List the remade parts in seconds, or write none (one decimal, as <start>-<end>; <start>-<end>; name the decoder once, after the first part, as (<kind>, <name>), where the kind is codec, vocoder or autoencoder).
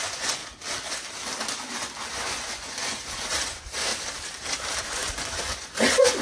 0.0-0.4 (vocoder, Vocos); 2.1-3.9; 4.8-6.2